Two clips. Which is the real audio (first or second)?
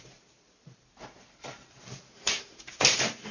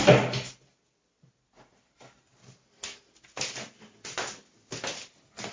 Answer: second